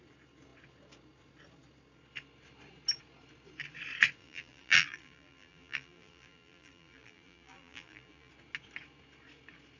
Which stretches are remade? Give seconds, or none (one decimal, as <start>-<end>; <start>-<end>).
4.2-8.3

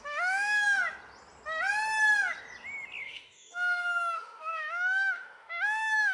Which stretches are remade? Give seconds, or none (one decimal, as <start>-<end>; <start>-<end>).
0.0-0.8; 3.0-6.1

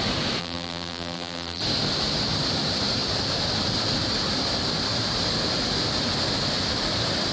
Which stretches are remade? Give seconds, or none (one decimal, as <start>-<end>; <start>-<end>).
0.4-1.6

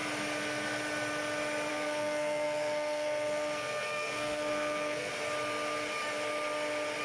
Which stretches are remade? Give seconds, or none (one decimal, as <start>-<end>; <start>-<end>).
1.7-5.1

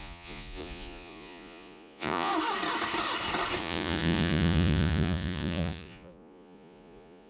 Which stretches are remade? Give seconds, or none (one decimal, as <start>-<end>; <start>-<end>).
0.0-2.3; 3.6-7.3

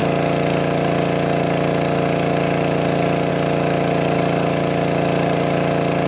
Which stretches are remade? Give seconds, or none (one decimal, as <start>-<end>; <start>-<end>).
none